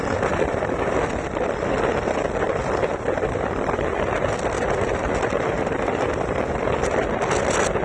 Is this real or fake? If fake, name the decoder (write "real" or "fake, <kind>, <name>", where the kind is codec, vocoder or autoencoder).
real